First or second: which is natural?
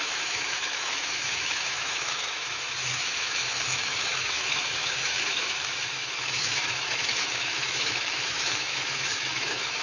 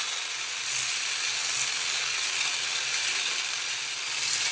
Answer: second